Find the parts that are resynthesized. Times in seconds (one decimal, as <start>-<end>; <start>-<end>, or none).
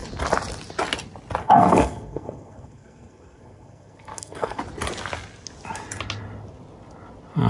1.4-4.6